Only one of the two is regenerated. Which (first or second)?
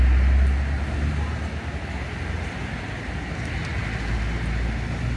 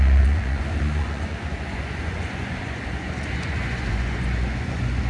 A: second